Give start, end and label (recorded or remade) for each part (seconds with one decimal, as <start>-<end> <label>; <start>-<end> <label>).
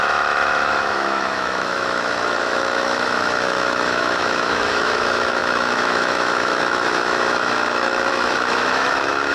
0.0-9.3 remade